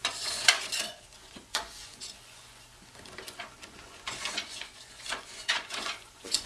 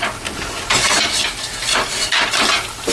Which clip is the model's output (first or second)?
first